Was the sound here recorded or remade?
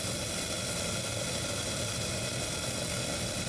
recorded